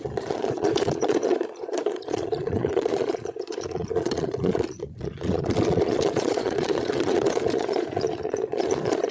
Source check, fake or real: fake